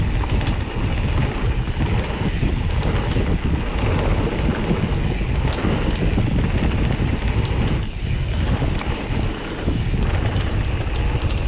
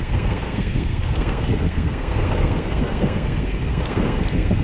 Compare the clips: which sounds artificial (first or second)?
second